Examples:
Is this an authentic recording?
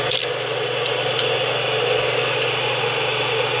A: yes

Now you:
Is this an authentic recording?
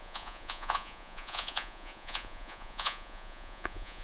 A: no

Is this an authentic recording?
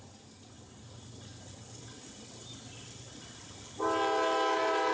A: yes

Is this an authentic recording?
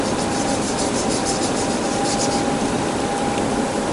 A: no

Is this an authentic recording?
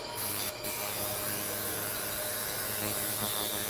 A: no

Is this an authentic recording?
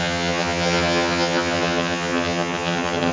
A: no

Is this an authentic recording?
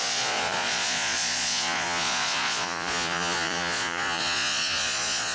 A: no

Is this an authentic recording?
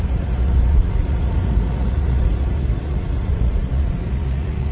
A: no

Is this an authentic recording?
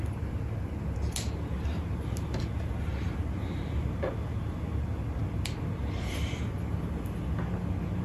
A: yes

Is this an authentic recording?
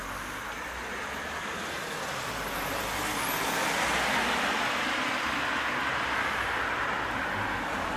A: yes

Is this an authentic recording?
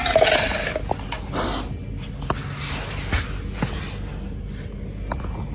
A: yes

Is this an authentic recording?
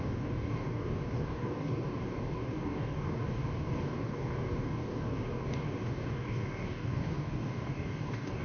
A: no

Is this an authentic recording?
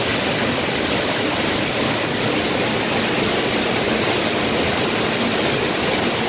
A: yes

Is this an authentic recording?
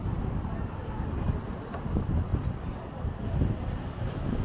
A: yes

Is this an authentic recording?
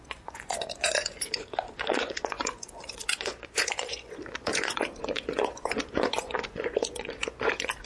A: no